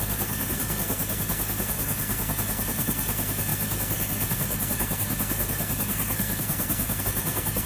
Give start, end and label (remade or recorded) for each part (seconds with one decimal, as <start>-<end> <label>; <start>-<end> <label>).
0.0-7.7 remade

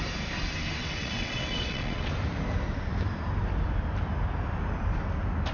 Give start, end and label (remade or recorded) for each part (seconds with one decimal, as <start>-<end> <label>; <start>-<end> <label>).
0.0-0.8 recorded; 0.8-2.1 remade; 2.1-5.5 recorded

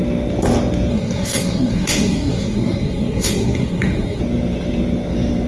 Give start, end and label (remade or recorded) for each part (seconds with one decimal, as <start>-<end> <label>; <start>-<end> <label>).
0.0-0.9 recorded; 0.9-4.2 remade; 4.2-5.5 recorded

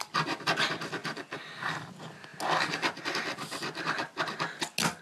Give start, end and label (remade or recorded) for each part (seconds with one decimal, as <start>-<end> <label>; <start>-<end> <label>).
0.0-1.0 recorded; 1.0-1.5 remade; 1.5-5.0 recorded